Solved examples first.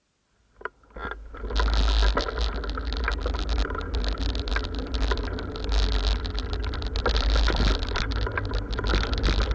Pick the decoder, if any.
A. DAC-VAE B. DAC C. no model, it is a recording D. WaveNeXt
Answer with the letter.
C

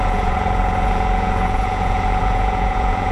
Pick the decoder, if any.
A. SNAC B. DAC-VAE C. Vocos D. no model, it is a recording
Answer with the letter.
C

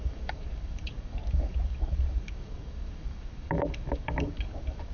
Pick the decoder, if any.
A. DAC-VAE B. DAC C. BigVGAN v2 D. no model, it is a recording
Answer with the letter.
B